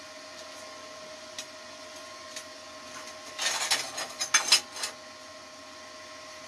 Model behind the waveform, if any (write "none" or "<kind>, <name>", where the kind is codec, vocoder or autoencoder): none